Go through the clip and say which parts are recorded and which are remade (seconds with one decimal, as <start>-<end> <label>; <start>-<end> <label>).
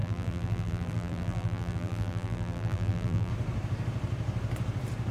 0.0-3.3 remade; 3.3-5.1 recorded